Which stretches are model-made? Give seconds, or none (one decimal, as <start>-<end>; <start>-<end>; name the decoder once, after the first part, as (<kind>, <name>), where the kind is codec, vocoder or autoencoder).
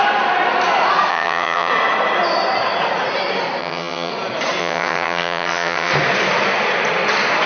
1.1-1.7 (vocoder, HiFi-GAN); 3.6-4.1; 4.6-5.9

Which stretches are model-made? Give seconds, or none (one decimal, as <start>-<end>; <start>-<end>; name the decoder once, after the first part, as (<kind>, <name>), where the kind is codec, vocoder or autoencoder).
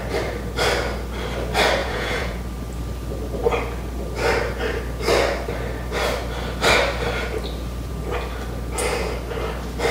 1.8-2.4 (vocoder, Vocos)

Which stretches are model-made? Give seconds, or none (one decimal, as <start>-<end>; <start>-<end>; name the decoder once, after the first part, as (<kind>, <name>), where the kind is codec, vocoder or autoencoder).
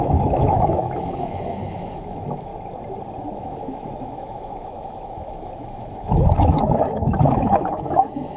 0.0-2.5 (autoencoder, DAC-VAE); 3.3-8.4